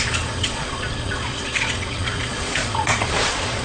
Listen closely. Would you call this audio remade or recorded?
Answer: remade